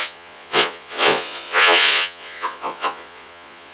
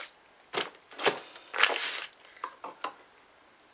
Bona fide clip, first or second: second